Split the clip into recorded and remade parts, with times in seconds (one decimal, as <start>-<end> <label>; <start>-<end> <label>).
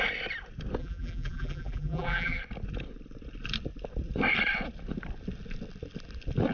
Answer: 0.0-0.8 recorded; 0.8-2.4 remade; 2.4-6.5 recorded